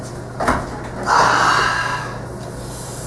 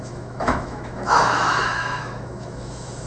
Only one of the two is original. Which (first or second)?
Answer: first